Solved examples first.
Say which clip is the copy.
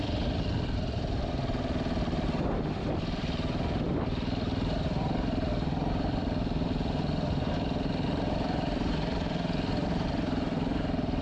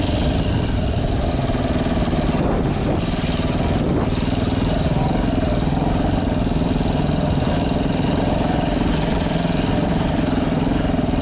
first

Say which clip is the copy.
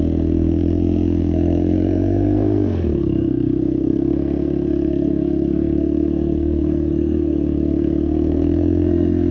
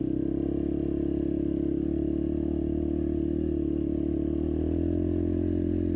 first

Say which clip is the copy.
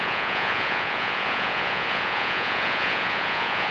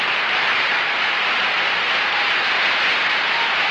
first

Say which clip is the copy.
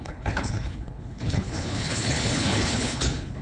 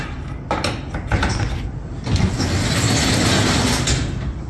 first